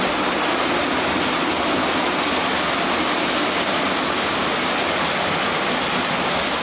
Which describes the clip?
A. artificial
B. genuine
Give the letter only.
B